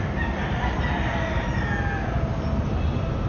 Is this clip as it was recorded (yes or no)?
yes